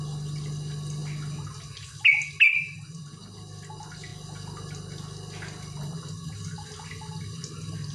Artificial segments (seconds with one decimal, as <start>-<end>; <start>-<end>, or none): none